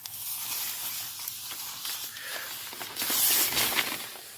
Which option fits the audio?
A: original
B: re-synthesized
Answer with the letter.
A